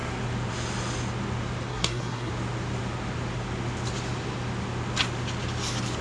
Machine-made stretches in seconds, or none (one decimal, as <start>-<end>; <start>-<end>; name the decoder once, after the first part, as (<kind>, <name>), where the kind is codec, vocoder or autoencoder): 1.7-2.3 (codec, SNAC)